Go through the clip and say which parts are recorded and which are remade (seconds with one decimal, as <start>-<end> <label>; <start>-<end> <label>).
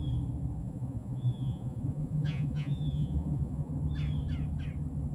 0.0-0.6 recorded; 0.6-3.7 remade; 3.7-5.1 recorded